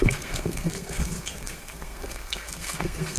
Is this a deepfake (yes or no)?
yes